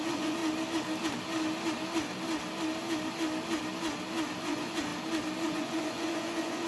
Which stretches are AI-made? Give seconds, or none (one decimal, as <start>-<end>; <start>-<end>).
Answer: 0.0-0.4; 4.4-4.9; 5.4-6.7